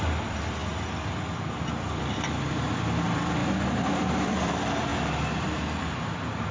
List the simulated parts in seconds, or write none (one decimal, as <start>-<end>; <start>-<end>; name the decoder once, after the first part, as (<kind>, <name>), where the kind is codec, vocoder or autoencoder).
0.0-3.4 (vocoder, BigVGAN v2); 3.9-4.9; 5.8-6.5